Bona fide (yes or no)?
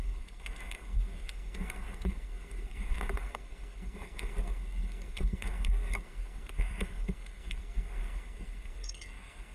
no